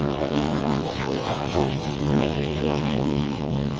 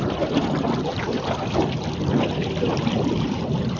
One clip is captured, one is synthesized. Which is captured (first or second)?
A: second